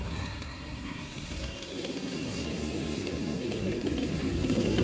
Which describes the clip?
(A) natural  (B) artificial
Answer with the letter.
B